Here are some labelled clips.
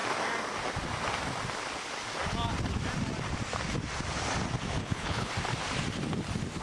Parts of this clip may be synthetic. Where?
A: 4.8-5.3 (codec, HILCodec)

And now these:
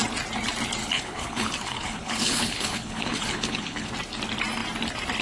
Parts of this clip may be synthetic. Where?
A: 0.8-3.9 (codec, HILCodec)